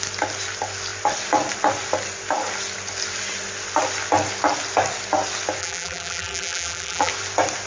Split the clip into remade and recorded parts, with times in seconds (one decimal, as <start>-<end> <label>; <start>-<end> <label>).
0.0-5.6 recorded; 5.6-7.1 remade; 7.1-7.7 recorded